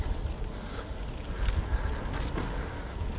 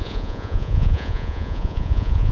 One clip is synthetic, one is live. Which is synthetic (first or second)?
second